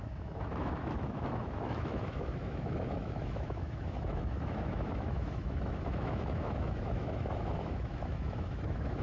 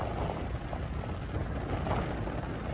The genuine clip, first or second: second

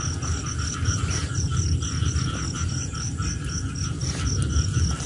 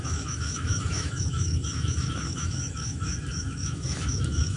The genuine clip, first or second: first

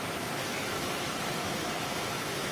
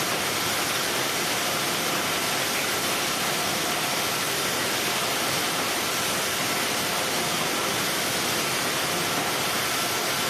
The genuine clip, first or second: second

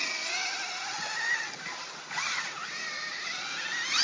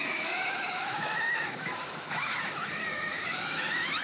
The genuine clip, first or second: first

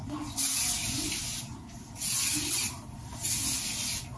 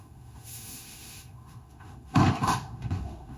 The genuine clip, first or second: first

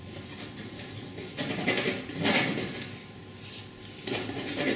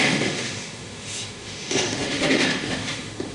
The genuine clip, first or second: first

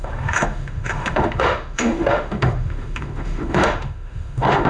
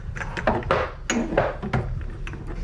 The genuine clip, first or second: second